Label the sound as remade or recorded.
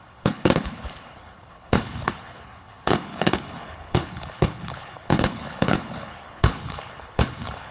remade